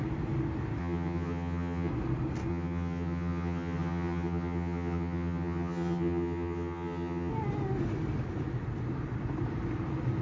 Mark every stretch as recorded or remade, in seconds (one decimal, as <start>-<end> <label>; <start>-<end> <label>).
0.0-0.8 recorded; 0.8-1.9 remade; 1.9-2.5 recorded; 2.5-7.3 remade; 7.3-10.2 recorded